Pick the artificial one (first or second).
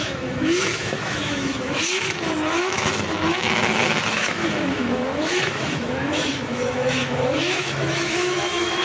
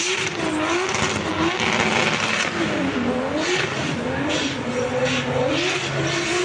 first